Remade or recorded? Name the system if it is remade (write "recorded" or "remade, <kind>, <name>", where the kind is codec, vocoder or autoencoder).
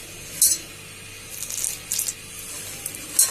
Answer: recorded